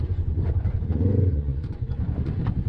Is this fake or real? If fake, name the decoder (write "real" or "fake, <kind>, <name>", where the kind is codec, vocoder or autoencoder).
fake, vocoder, Vocos